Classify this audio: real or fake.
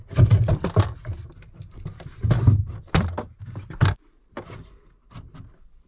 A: fake